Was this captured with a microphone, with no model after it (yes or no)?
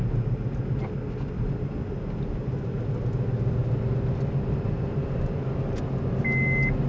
yes